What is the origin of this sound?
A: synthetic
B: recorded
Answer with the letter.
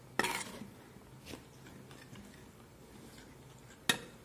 B